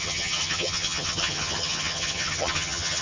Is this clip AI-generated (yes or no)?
yes